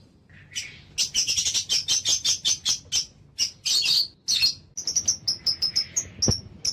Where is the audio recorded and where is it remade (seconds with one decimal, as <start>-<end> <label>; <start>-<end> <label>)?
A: 0.0-6.7 recorded